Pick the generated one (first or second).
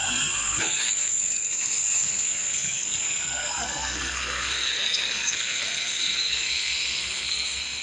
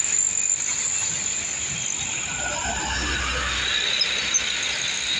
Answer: first